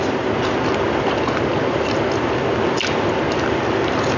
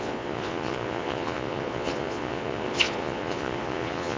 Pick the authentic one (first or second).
first